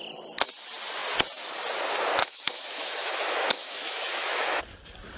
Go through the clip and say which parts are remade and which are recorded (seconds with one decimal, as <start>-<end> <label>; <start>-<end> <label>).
0.0-2.2 recorded; 2.2-4.6 remade; 4.6-5.2 recorded